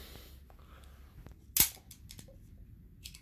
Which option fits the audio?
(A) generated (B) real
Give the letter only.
B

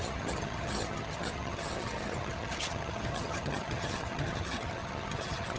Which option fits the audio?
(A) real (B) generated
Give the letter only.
B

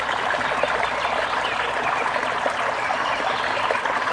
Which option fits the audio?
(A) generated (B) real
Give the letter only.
B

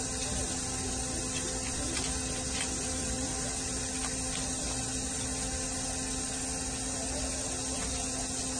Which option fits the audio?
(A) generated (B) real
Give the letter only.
B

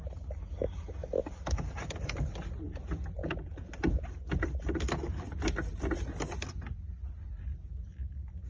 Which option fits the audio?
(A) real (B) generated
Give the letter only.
A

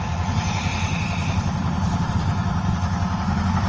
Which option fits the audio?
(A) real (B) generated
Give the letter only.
B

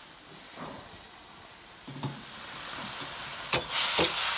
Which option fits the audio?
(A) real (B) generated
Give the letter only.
A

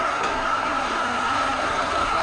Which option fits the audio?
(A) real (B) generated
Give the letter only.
B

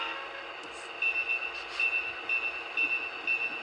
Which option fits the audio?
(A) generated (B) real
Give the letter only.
B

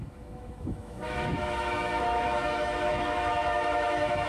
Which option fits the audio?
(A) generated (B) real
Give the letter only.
A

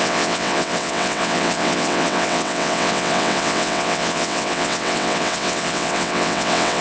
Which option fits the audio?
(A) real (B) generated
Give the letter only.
B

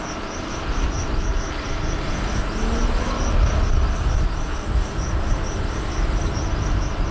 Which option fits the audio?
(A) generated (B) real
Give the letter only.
B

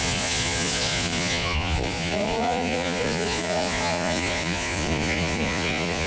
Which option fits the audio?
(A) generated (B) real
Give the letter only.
A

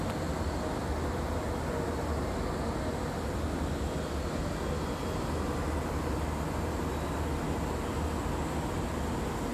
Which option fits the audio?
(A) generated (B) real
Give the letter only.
B